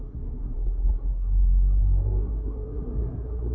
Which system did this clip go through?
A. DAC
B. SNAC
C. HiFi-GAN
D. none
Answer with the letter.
B